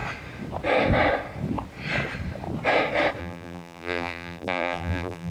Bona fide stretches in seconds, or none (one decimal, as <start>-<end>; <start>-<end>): 0.0-3.2